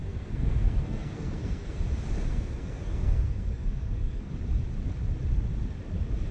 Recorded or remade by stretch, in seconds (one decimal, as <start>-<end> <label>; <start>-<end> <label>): 0.0-1.8 remade; 1.8-2.3 recorded; 2.3-4.3 remade; 4.3-6.3 recorded